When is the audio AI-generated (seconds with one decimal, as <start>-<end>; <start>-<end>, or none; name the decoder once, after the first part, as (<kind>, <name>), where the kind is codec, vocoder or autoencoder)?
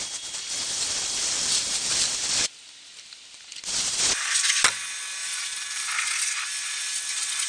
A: 5.2-5.8 (vocoder, BigVGAN v2)